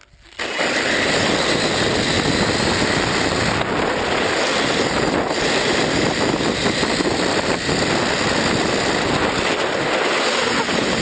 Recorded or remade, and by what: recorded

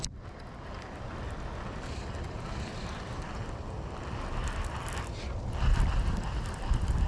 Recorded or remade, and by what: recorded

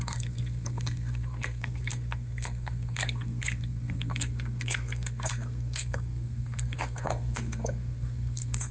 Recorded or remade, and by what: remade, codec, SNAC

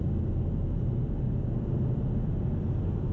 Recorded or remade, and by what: recorded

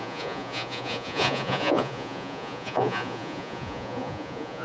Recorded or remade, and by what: remade, vocoder, Vocos